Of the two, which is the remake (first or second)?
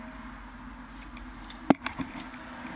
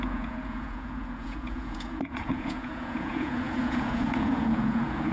second